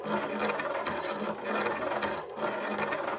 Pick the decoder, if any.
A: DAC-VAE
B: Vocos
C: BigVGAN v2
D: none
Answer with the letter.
D